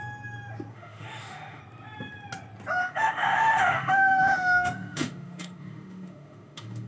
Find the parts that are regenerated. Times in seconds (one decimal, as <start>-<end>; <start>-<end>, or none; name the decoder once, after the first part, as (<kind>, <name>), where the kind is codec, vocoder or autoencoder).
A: 0.7-1.6 (autoencoder, DAC-VAE); 2.8-6.9